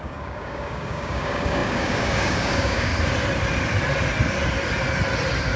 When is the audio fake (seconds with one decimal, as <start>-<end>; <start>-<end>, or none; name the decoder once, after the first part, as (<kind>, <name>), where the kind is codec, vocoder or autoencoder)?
0.0-2.9 (codec, DAC)